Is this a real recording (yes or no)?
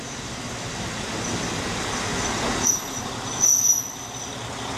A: yes